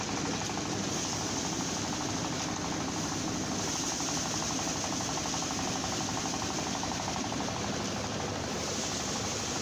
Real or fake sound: real